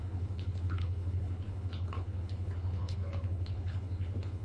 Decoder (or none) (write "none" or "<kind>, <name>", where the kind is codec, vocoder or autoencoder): codec, HILCodec